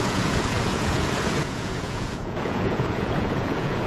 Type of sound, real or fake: fake